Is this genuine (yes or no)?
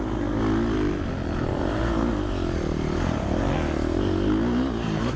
yes